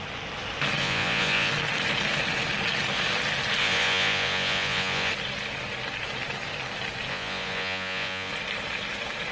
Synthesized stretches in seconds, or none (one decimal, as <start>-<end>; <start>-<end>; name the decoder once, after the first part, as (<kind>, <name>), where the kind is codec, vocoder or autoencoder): 0.8-1.5 (vocoder, Vocos); 3.6-5.1; 7.1-8.3